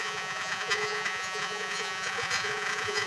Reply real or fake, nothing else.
fake